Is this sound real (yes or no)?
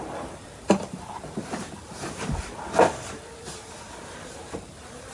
no